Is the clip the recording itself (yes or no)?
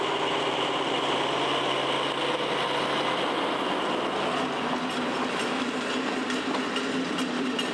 yes